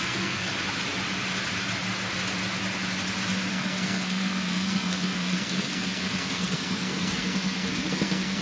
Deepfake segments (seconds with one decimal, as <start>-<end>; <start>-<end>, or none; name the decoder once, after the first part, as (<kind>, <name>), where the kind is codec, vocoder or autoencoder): 0.0-0.5 (codec, SNAC); 3.5-8.4